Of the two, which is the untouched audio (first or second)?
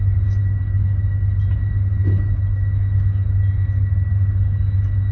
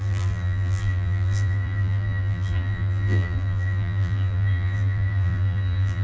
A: first